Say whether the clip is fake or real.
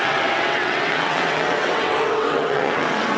fake